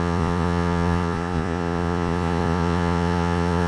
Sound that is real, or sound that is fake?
fake